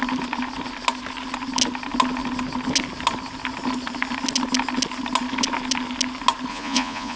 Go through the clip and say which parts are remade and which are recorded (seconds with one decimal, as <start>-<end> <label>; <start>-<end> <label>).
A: 0.0-6.5 recorded; 6.5-7.2 remade